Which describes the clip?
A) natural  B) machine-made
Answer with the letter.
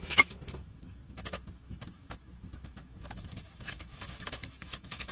B